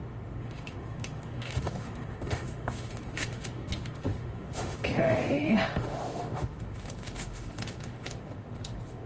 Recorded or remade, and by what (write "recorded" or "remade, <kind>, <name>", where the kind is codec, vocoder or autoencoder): remade, autoencoder, DAC-VAE